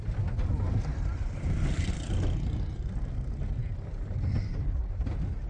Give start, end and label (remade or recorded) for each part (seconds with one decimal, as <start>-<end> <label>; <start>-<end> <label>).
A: 0.0-0.9 recorded; 0.9-1.9 remade; 1.9-5.5 recorded